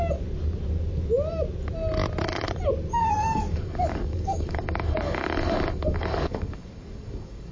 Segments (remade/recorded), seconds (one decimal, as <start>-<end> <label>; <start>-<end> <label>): 0.0-3.0 recorded; 3.0-7.5 remade